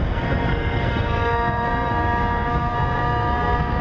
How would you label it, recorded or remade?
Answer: remade